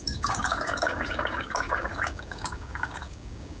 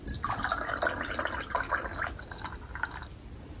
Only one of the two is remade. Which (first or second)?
first